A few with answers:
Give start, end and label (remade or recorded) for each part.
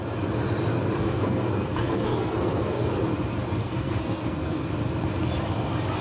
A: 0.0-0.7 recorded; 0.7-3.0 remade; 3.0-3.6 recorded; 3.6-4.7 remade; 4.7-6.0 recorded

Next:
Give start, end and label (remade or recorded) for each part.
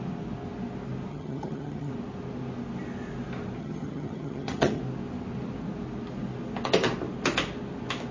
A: 0.0-1.1 recorded; 1.1-1.9 remade; 1.9-3.6 recorded; 3.6-4.8 remade; 4.8-8.1 recorded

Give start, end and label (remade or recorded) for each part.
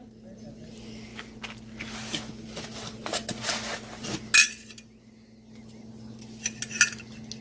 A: 0.0-7.4 recorded